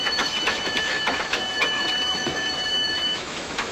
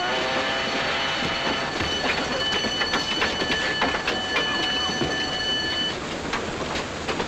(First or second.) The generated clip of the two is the first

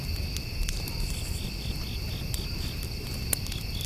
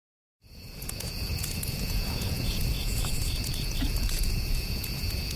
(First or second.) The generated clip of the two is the second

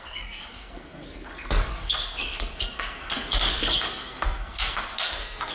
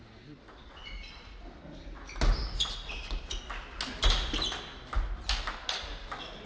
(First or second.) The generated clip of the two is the first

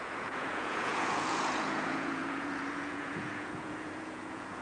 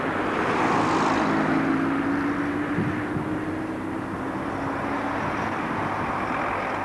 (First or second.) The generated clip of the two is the first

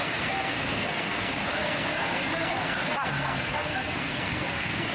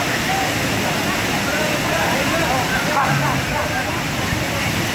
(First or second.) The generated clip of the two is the first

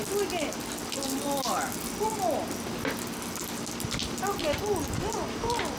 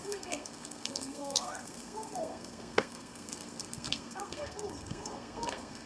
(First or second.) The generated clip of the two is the second